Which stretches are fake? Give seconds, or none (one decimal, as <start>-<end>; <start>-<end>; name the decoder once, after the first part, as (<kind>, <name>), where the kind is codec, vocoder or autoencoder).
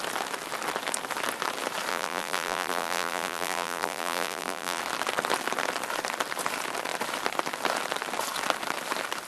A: 1.9-4.8 (vocoder, BigVGAN v2)